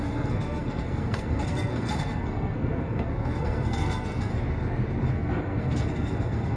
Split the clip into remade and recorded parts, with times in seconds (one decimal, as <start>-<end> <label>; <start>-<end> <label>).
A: 0.0-4.3 remade; 4.3-5.1 recorded; 5.1-6.6 remade

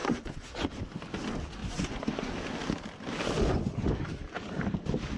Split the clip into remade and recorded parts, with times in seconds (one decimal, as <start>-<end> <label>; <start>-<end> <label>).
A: 0.0-0.7 remade; 0.7-1.6 recorded; 1.6-2.3 remade; 2.3-5.2 recorded

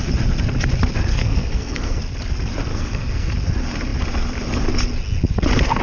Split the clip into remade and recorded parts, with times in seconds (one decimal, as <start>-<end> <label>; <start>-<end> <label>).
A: 0.0-1.1 recorded; 1.1-2.0 remade; 2.0-2.7 recorded; 2.7-3.3 remade; 3.3-5.8 recorded

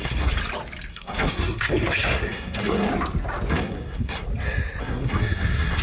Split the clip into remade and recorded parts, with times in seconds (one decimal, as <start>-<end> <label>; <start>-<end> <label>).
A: 0.0-0.4 remade; 0.4-0.9 recorded; 0.9-2.9 remade; 2.9-3.5 recorded; 3.5-4.3 remade; 4.3-4.8 recorded; 4.8-5.8 remade

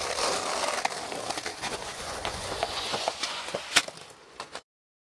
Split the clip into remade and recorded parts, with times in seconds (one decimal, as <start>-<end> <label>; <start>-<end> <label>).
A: 0.0-1.5 recorded; 1.5-3.8 remade; 3.8-4.2 recorded; 4.2-5.0 remade